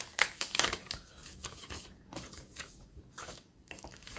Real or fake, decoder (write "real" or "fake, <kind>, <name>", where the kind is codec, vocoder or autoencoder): fake, codec, DAC